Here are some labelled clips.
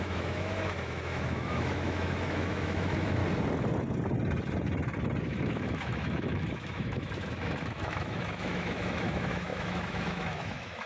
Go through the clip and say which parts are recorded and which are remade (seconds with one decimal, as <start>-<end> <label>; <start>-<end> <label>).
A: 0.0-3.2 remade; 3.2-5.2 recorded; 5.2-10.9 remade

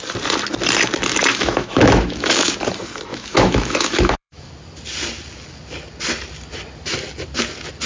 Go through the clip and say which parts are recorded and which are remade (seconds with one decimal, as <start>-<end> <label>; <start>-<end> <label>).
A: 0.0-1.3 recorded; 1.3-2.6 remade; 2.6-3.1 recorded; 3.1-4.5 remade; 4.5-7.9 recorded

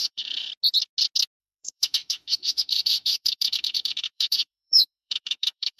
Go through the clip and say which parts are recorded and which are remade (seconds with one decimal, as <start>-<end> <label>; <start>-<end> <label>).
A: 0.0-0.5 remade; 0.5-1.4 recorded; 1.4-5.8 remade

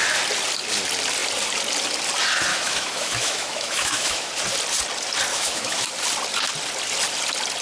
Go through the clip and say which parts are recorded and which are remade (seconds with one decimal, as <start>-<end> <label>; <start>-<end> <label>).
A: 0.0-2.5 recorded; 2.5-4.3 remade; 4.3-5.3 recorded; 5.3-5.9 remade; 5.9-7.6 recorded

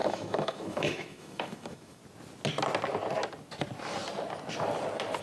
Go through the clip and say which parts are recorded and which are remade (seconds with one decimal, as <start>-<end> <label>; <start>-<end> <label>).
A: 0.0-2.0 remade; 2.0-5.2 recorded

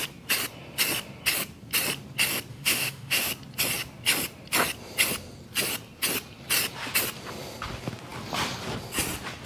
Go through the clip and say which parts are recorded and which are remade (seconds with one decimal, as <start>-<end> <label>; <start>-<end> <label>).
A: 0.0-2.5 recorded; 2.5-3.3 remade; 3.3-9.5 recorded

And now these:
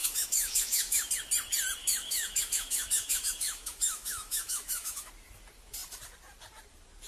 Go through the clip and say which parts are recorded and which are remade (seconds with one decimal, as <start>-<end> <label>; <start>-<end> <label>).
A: 0.0-1.1 remade; 1.1-1.8 recorded; 1.8-5.1 remade; 5.1-7.1 recorded

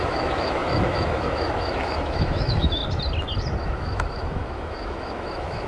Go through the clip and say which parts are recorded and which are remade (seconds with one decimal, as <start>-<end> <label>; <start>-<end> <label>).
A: 0.0-2.8 remade; 2.8-3.6 recorded; 3.6-5.7 remade